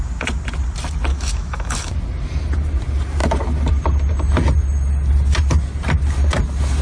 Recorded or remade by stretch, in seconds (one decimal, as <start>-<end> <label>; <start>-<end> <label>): 0.0-1.1 recorded; 1.1-1.9 remade; 1.9-6.8 recorded